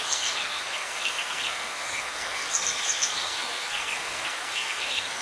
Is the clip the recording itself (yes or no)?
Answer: no